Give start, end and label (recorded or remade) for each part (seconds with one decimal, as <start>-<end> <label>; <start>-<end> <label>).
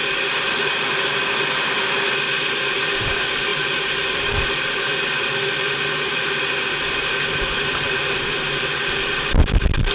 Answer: 0.0-9.9 recorded